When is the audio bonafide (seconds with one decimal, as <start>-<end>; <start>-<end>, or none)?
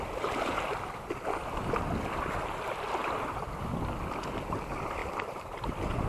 0.0-3.0; 3.6-5.0